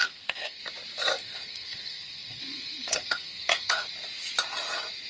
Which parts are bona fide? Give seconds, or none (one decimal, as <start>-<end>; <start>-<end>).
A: 0.6-1.2; 3.9-5.1

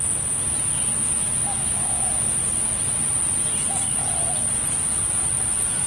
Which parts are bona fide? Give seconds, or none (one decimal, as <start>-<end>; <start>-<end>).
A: 0.0-5.9

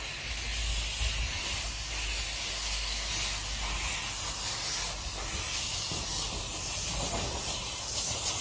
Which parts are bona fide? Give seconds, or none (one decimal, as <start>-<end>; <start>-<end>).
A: 0.0-2.5; 3.1-8.4

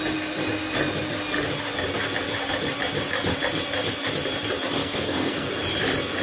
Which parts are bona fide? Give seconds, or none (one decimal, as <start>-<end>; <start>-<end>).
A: 0.0-4.8; 5.5-6.2

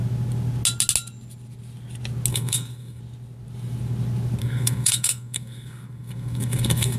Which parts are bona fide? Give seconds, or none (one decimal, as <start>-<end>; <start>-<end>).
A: 0.0-2.3; 3.0-4.4

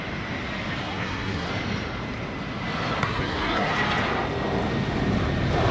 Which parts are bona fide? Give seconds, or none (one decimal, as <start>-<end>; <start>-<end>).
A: 0.0-0.8; 1.5-3.0; 3.7-5.7

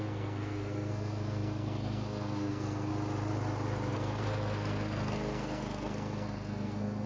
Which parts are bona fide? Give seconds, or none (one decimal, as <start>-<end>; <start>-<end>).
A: 2.9-3.9

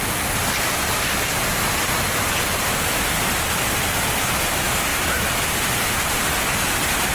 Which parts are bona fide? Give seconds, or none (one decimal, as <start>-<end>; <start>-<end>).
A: 0.0-7.1